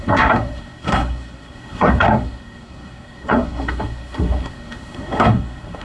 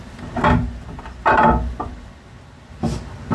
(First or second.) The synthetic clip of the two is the first